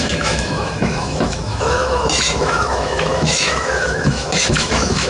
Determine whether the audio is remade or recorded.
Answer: remade